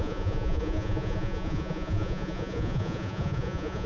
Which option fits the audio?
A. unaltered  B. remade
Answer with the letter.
B